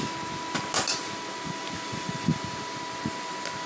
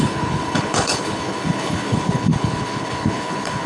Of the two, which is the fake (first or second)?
second